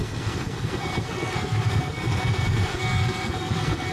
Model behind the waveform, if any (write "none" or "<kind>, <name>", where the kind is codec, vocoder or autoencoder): codec, SNAC